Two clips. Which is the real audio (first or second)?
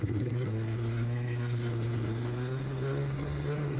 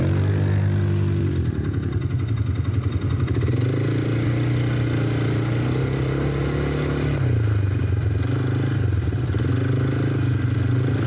second